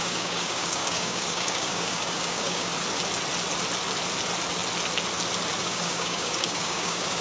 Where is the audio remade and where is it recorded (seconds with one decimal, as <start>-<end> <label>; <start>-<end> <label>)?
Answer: 0.0-2.7 remade; 2.7-5.6 recorded; 5.6-7.2 remade